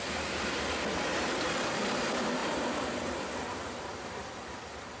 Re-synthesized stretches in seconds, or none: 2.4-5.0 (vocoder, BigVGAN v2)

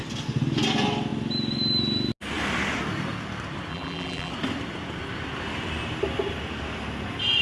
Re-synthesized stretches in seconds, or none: 3.7-4.3 (vocoder, BigVGAN v2)

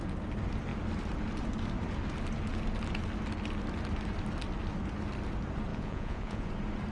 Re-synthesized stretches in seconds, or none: 5.7-6.5 (vocoder, Vocos)